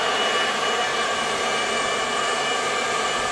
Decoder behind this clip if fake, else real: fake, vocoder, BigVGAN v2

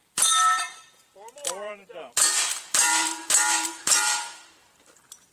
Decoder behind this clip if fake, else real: fake, vocoder, BigVGAN v2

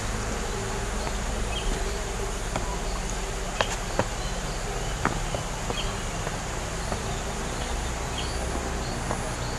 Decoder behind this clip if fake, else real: real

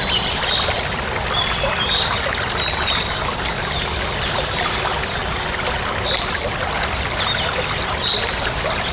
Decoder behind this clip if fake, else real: real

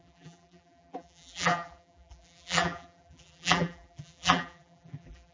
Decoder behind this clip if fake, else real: fake, vocoder, BigVGAN v2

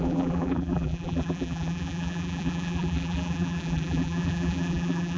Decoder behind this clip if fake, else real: fake, vocoder, BigVGAN v2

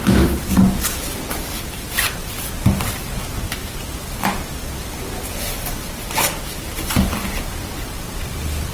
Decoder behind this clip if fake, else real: fake, vocoder, BigVGAN v2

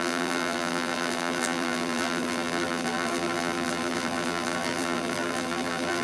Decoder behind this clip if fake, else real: fake, vocoder, BigVGAN v2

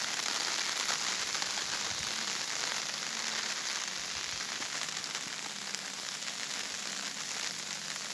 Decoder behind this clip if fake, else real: real